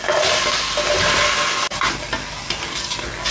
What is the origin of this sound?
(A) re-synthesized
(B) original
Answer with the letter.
B